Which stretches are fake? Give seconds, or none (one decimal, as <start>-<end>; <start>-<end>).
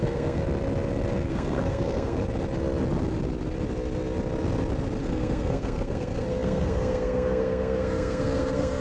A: 0.0-0.4; 1.3-2.2; 5.0-8.8